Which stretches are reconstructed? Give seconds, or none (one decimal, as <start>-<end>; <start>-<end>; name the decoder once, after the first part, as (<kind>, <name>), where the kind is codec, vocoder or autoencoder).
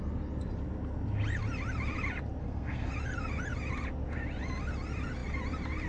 2.4-2.9 (codec, SNAC)